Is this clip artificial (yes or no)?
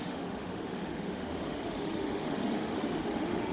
yes